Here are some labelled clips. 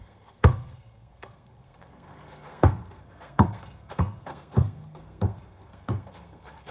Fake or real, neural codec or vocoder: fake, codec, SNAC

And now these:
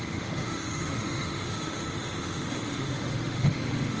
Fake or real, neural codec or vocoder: fake, autoencoder, DAC-VAE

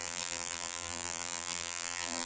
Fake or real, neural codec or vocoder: fake, vocoder, BigVGAN v2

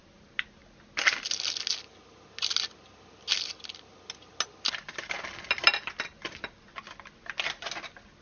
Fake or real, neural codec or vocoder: real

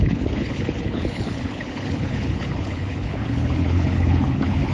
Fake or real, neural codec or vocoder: fake, codec, HILCodec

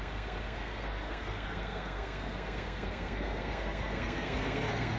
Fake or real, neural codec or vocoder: fake, codec, SNAC